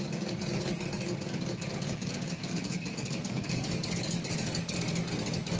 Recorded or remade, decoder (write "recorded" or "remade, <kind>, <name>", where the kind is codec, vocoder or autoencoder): remade, codec, DAC